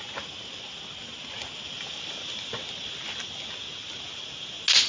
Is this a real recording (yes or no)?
yes